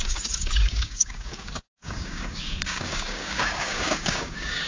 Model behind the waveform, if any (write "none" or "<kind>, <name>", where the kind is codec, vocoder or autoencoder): codec, DAC